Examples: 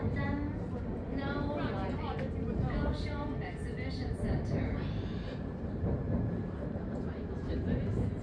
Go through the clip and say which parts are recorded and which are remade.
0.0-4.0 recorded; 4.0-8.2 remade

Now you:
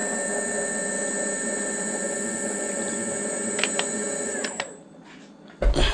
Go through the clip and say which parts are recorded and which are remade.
0.0-5.9 recorded

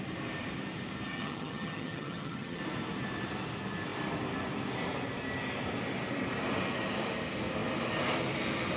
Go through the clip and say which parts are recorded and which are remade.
0.0-1.1 recorded; 1.1-2.6 remade; 2.6-8.8 recorded

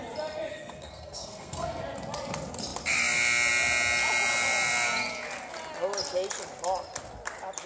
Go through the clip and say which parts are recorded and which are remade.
0.0-0.5 recorded; 0.5-1.8 remade; 1.8-7.7 recorded